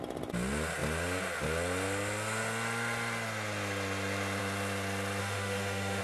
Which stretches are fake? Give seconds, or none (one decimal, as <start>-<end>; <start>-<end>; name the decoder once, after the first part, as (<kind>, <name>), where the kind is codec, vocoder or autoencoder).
5.2-6.0 (autoencoder, DAC-VAE)